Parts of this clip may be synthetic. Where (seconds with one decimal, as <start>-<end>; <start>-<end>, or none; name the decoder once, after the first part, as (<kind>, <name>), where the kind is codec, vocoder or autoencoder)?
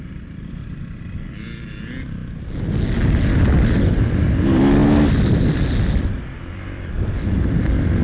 0.0-2.2 (vocoder, BigVGAN v2); 3.8-8.0